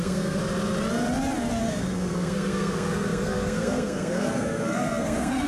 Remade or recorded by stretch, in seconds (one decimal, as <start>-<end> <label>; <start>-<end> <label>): 0.0-0.4 remade; 0.4-1.6 recorded; 1.6-5.5 remade